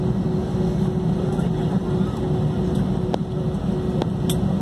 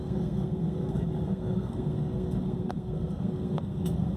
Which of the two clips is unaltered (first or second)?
first